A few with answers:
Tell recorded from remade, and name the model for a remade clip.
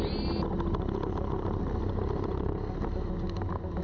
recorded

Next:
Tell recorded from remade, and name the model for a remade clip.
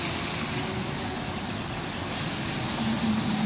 recorded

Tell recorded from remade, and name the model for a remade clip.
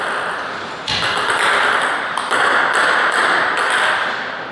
recorded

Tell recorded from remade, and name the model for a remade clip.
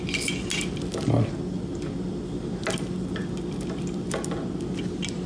recorded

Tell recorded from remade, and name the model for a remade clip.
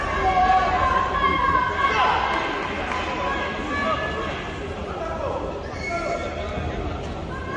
recorded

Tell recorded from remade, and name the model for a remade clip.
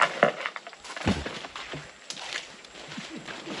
recorded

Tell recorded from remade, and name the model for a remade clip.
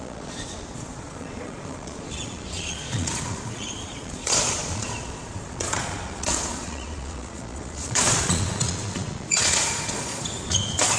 remade, vocoder, Vocos